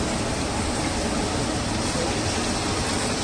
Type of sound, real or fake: real